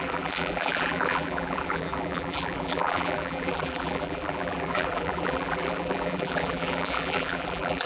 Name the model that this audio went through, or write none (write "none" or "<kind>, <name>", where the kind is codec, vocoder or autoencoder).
vocoder, BigVGAN v2